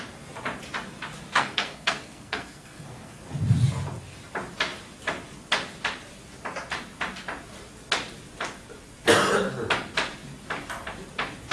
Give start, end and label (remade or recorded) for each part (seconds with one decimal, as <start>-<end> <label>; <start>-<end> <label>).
0.0-1.3 recorded; 1.3-3.2 remade; 3.2-11.5 recorded